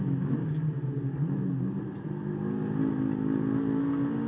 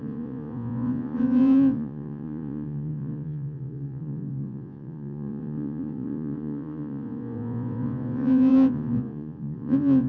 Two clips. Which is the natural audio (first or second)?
first